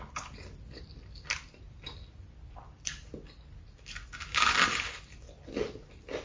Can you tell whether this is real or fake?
real